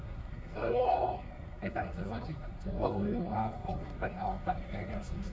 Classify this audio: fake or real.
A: fake